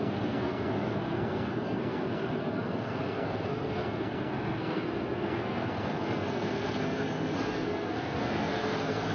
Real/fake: fake